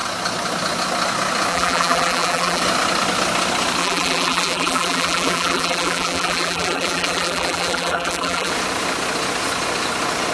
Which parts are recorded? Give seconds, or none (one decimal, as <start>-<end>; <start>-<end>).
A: 0.0-1.5; 2.6-3.8; 8.5-10.3